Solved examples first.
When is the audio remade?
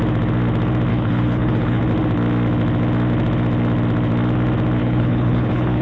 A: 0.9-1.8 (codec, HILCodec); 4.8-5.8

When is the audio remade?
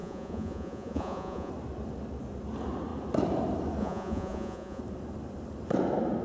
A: 0.0-1.5 (vocoder, Vocos); 3.8-4.8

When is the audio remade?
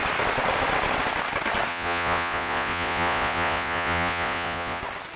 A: 1.7-4.8 (vocoder, Vocos)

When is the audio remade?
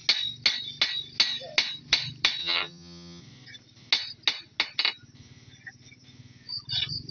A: 2.4-3.2 (vocoder, HiFi-GAN)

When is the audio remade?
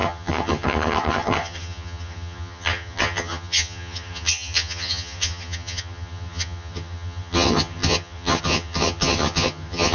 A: 0.0-9.9 (vocoder, HiFi-GAN)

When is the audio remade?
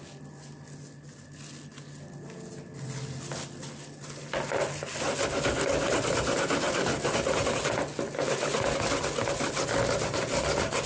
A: none